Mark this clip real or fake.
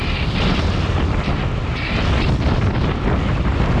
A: real